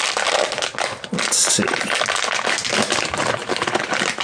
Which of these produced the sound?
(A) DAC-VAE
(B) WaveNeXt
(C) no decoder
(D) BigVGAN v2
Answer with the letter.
C